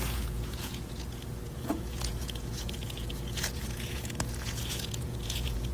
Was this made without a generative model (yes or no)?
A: no